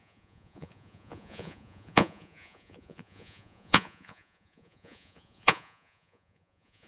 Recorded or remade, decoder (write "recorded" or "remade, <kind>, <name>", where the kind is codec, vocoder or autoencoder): remade, vocoder, Vocos